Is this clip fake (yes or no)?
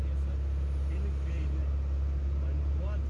no